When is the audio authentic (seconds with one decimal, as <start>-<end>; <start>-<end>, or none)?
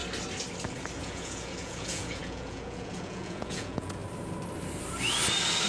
0.0-1.0; 4.0-5.7